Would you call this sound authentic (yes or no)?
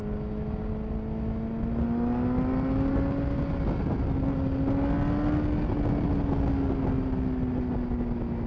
yes